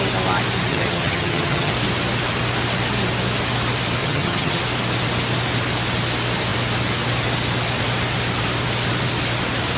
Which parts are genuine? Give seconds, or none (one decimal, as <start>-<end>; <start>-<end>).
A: 0.0-0.7; 1.7-4.0; 4.6-9.8